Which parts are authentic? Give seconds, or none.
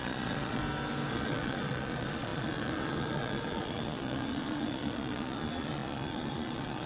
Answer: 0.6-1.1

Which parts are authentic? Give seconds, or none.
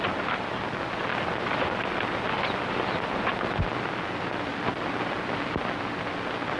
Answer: 0.0-6.6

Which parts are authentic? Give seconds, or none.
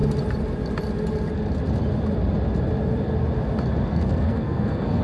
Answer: 0.0-3.9